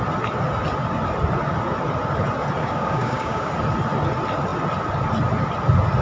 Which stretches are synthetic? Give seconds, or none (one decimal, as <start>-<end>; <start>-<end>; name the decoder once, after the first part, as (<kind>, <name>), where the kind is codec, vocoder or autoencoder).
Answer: 2.6-3.5 (codec, DAC)